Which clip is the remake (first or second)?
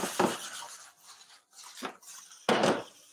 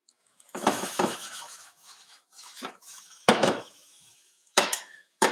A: second